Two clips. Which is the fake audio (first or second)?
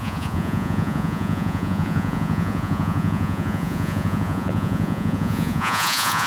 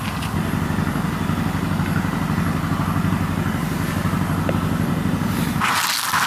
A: first